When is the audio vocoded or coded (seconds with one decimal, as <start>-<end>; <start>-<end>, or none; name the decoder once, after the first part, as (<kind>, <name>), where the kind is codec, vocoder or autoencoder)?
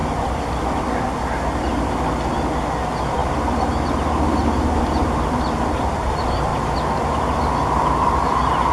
none